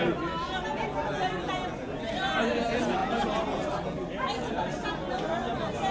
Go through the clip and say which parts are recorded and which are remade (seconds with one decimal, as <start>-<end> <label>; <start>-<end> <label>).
0.0-5.9 recorded